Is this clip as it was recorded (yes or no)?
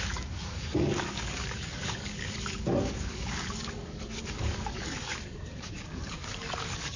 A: no